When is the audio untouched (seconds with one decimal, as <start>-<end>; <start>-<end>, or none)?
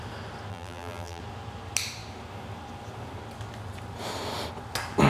0.0-0.5; 1.2-5.1